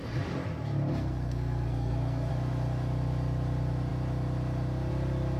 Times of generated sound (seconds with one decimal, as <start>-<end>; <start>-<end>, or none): 0.9-2.3